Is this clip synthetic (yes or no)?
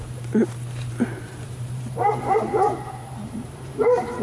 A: yes